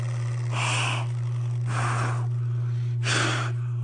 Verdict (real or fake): real